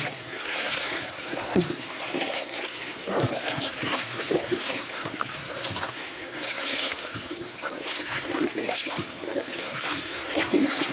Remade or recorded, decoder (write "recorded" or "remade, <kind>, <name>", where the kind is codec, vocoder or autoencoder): remade, codec, SNAC